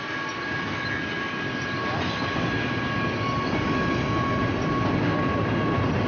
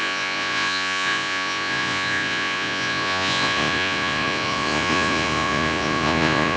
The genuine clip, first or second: first